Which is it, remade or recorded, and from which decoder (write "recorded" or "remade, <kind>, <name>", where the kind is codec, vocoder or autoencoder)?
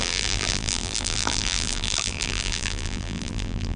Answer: remade, vocoder, BigVGAN v2